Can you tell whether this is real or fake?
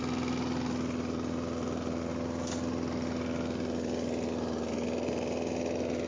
real